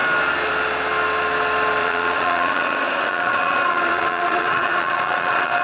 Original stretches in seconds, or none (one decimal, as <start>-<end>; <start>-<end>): 0.0-1.8